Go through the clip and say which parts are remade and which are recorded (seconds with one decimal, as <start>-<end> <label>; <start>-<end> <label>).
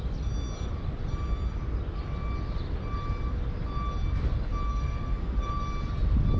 0.0-4.7 recorded; 4.7-5.5 remade; 5.5-6.4 recorded